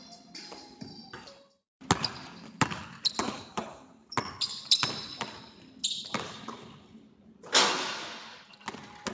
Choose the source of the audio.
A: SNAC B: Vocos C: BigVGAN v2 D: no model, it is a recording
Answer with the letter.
D